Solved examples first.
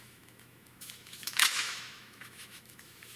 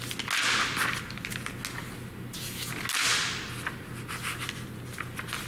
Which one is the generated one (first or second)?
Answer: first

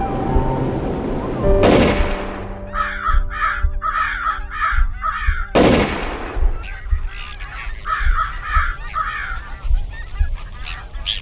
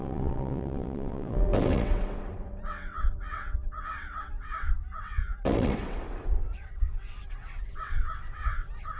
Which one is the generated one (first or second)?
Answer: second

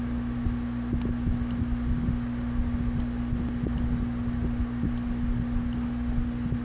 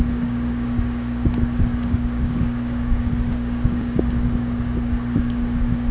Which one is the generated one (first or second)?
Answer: second